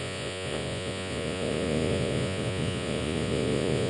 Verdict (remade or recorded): remade